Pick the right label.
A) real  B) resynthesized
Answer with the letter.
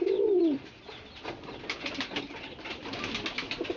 A